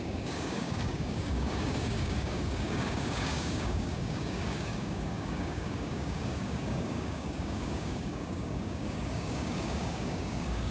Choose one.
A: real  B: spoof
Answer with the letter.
B